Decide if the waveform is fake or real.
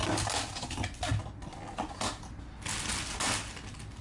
real